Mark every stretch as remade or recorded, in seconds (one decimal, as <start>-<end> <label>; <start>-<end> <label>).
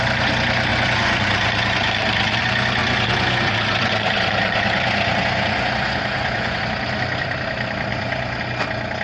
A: 0.0-0.7 recorded; 0.7-2.4 remade; 2.4-2.8 recorded; 2.8-6.6 remade; 6.6-7.9 recorded; 7.9-8.4 remade; 8.4-9.0 recorded